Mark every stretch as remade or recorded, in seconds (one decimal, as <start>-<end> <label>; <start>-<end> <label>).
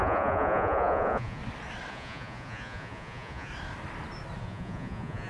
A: 0.0-1.4 remade; 1.4-1.9 recorded; 1.9-3.5 remade; 3.5-4.4 recorded; 4.4-5.3 remade